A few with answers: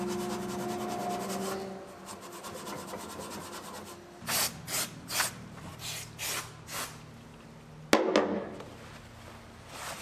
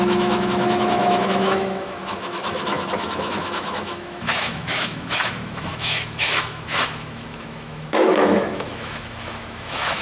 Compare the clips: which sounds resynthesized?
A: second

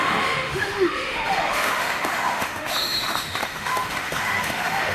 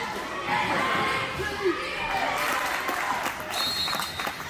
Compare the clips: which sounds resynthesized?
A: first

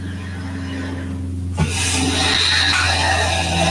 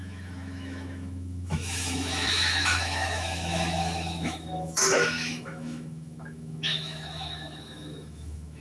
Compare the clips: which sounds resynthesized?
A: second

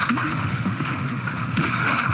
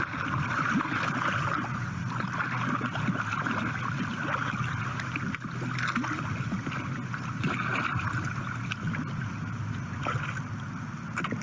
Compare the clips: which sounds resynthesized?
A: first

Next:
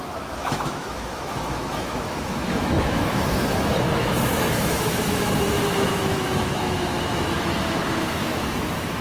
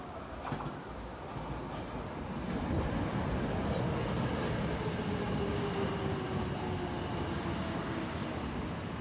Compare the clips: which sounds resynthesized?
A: first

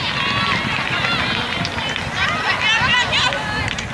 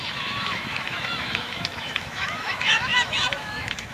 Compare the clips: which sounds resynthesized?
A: second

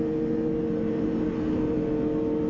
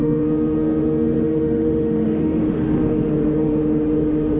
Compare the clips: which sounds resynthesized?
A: second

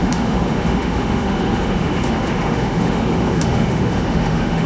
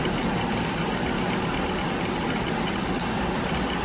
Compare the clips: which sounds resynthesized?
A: first